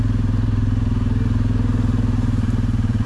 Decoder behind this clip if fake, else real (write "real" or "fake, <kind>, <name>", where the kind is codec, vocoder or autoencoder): fake, vocoder, BigVGAN v2